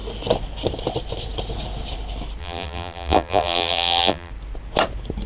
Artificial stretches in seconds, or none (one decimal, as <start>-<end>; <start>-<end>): 2.4-4.3